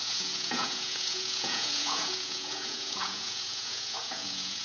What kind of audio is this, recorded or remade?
remade